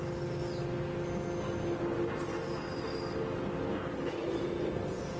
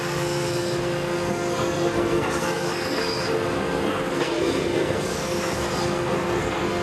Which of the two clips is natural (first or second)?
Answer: first